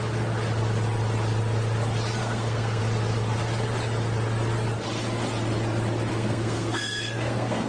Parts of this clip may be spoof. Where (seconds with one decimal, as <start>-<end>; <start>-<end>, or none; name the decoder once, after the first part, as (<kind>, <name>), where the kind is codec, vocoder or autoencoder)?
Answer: 2.2-2.8 (codec, SNAC); 6.1-7.7